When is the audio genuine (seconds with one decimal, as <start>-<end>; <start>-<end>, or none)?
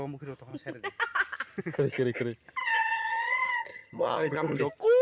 0.0-2.6; 4.6-5.0